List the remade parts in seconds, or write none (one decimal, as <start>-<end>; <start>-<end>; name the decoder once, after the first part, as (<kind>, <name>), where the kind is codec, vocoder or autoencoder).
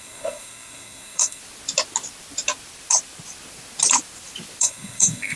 0.0-1.4 (codec, SNAC); 4.6-5.4